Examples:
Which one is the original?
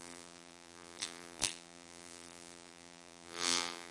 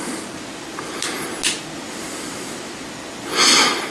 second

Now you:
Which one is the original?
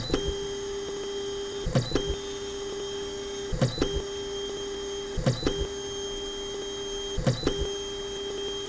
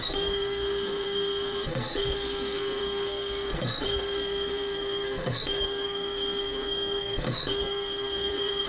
first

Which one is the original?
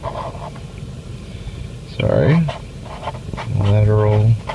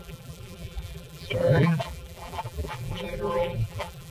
first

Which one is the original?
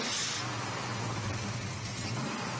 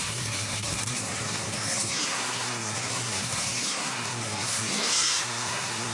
first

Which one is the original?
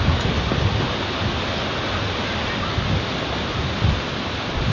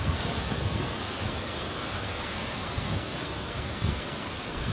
first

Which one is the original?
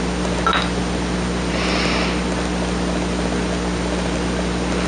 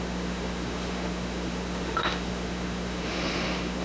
first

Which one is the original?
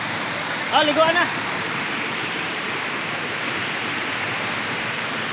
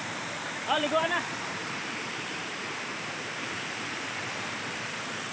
first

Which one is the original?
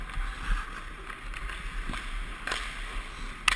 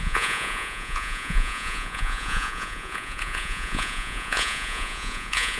first